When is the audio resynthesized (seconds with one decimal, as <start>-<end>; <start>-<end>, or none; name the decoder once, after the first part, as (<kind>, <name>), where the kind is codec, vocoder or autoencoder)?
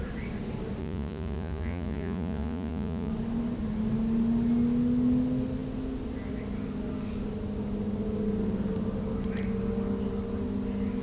0.8-3.1 (vocoder, Vocos)